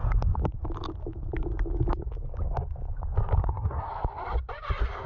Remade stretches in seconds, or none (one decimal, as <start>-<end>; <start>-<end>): 3.4-3.9